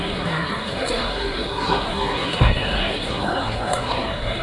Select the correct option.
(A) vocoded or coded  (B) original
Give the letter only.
A